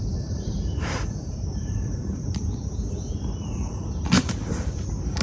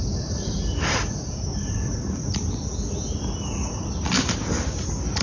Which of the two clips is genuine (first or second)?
second